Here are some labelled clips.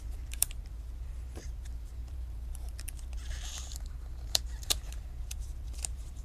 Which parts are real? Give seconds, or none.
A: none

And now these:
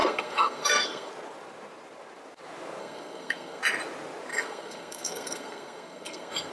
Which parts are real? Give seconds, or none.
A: 1.1-2.8; 3.6-4.3